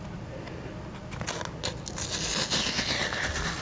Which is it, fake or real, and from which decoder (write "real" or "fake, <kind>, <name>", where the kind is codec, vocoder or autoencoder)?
real